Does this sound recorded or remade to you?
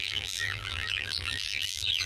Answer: remade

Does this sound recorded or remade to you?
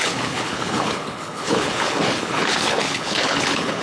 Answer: remade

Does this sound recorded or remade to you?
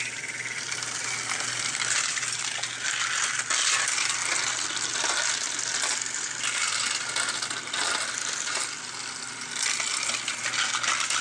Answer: recorded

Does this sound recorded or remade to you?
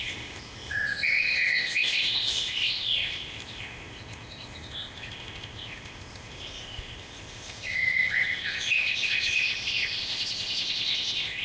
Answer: remade